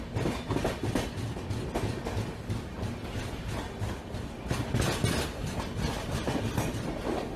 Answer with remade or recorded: recorded